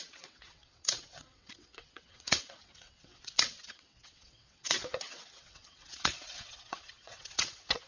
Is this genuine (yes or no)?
no